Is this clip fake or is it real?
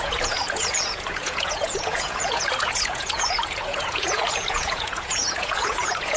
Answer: fake